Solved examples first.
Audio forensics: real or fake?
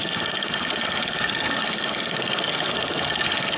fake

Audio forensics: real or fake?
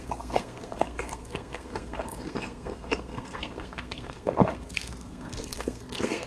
fake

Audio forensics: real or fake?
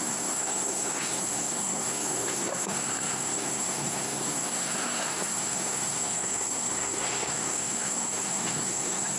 fake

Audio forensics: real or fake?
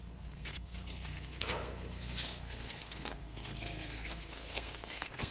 fake